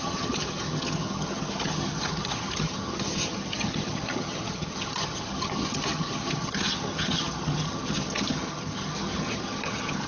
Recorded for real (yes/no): no